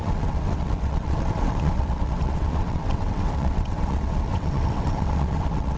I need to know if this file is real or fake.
fake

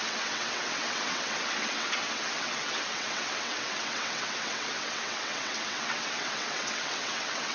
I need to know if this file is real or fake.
fake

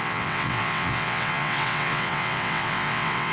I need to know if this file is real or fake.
fake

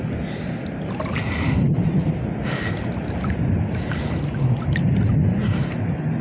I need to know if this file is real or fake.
real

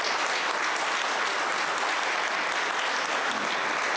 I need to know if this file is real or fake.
real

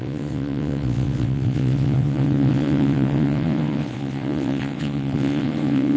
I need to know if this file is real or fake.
fake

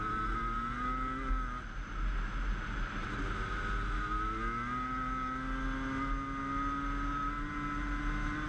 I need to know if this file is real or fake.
real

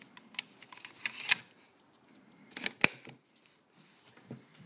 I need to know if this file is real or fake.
real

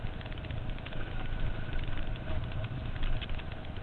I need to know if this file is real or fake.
real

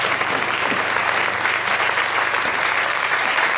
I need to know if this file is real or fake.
real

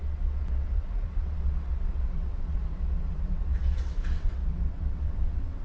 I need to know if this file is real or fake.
fake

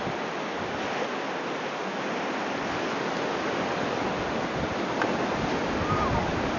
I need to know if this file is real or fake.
real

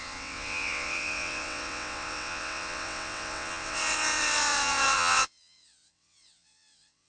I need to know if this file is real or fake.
fake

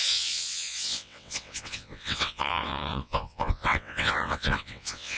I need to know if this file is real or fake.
fake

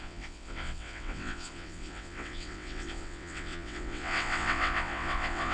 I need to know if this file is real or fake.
fake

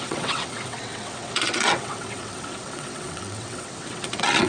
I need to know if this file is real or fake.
fake